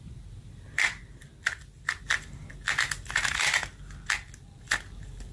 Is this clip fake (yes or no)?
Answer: no